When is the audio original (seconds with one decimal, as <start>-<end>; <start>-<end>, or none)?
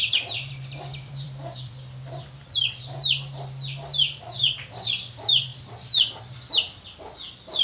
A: 0.0-0.9; 2.5-7.6